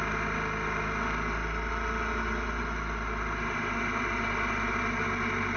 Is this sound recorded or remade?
recorded